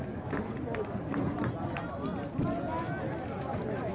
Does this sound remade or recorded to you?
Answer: recorded